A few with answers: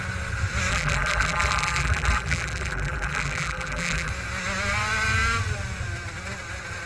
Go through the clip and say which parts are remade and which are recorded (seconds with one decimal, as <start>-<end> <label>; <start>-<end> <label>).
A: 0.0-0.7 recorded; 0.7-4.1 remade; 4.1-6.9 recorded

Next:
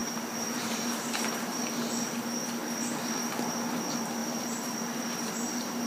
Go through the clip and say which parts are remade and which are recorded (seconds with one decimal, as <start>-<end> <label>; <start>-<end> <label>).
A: 0.0-1.6 remade; 1.6-2.6 recorded; 2.6-3.8 remade; 3.8-4.2 recorded; 4.2-5.9 remade

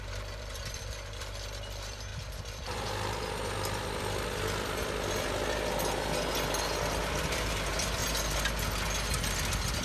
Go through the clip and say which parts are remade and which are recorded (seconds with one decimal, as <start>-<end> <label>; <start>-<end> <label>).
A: 0.0-2.1 remade; 2.1-7.2 recorded; 7.2-8.0 remade; 8.0-9.8 recorded

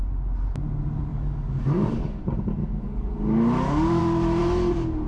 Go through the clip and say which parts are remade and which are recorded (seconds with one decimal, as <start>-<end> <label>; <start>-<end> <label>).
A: 0.0-1.1 recorded; 1.1-2.2 remade; 2.2-2.6 recorded; 2.6-4.0 remade; 4.0-5.1 recorded